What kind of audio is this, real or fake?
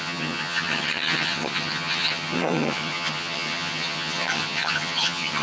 fake